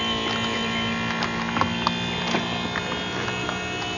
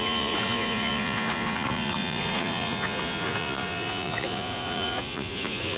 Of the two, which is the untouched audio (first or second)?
first